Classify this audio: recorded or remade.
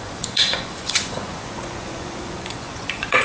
remade